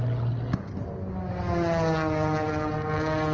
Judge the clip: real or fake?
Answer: real